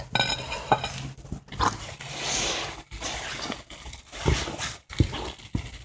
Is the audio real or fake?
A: real